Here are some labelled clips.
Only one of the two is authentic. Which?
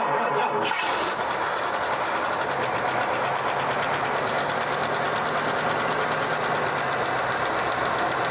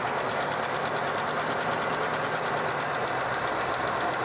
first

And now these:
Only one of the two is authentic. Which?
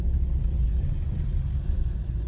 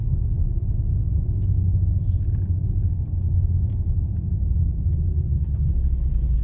second